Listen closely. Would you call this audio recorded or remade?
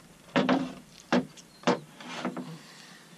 remade